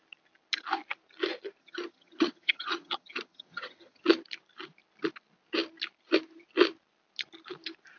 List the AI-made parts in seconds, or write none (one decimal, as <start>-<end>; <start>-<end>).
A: 1.6-4.0